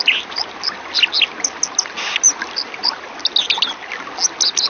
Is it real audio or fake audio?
real